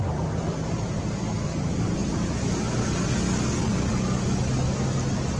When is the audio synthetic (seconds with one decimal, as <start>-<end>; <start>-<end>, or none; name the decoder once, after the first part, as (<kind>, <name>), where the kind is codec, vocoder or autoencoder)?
2.0-3.1 (vocoder, BigVGAN v2); 3.7-4.4

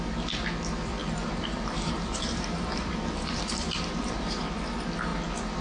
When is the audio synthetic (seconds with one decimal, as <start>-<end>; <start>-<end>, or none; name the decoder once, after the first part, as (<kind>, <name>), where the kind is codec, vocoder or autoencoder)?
1.0-4.4 (vocoder, BigVGAN v2)

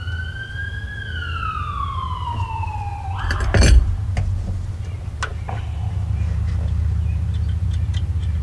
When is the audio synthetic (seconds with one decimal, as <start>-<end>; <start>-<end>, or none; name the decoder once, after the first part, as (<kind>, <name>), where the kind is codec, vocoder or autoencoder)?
none

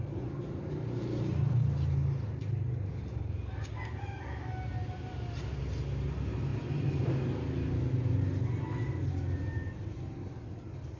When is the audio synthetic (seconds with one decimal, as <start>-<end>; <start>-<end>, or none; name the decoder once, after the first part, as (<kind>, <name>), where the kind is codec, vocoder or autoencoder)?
4.8-5.6 (vocoder, BigVGAN v2); 6.5-7.1

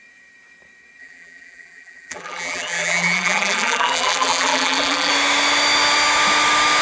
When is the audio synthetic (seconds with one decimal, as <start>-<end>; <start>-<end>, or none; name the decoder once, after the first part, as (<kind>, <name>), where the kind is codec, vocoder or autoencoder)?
1.0-5.1 (vocoder, BigVGAN v2)

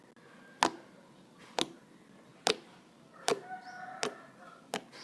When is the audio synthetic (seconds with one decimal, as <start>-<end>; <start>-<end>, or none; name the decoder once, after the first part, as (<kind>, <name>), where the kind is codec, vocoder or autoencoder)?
2.3-3.5 (vocoder, BigVGAN v2)

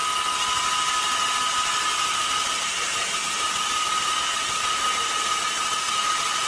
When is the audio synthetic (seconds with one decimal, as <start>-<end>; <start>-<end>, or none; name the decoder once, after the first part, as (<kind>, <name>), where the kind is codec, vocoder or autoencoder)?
1.9-4.8 (vocoder, BigVGAN v2)

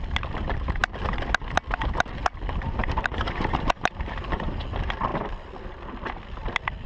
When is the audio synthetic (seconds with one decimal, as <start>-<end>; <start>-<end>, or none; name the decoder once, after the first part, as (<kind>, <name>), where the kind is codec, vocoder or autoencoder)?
2.8-4.6 (vocoder, BigVGAN v2)